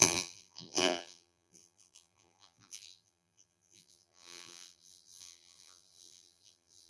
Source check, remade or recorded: remade